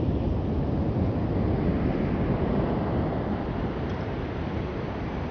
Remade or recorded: recorded